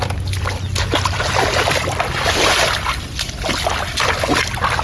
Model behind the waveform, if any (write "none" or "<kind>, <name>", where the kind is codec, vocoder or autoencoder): none